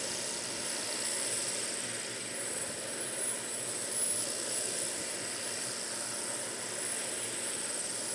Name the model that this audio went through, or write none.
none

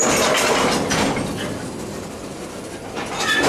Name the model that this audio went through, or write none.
none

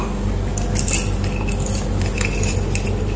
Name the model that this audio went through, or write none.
none